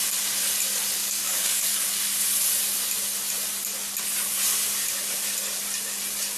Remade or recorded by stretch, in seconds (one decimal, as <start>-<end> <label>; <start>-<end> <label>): 0.0-1.0 recorded; 1.0-2.0 remade; 2.0-6.4 recorded